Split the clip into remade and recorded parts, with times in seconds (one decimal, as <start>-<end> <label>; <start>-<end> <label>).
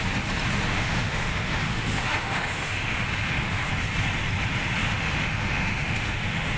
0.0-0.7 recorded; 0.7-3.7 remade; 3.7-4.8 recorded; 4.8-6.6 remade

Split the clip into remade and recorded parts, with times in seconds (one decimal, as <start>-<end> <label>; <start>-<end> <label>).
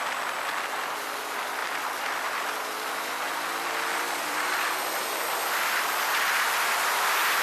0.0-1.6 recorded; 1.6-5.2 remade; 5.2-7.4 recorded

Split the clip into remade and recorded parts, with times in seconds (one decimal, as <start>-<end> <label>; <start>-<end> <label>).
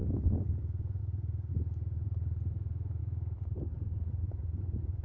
0.0-0.5 remade; 0.5-1.0 recorded; 1.0-1.5 remade; 1.5-3.0 recorded; 3.0-4.1 remade; 4.1-5.0 recorded